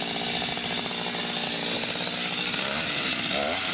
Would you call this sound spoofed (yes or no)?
no